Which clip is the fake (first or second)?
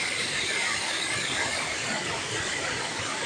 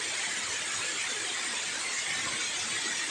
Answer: first